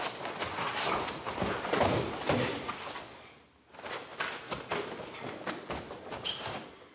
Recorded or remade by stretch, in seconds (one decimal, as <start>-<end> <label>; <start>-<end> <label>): 0.0-6.9 recorded